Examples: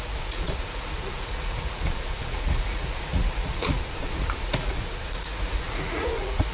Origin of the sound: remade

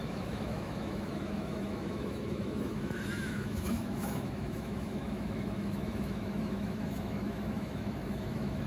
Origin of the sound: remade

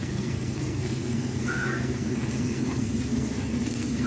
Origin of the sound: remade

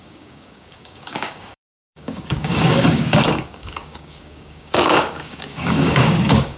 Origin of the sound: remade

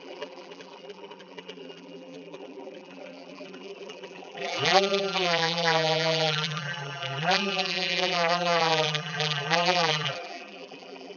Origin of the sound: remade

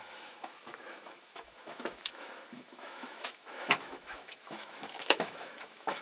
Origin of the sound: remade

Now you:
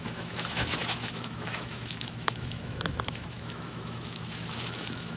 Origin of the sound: remade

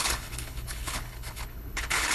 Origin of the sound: remade